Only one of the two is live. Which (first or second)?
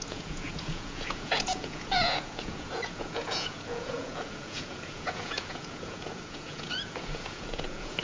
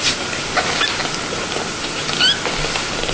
second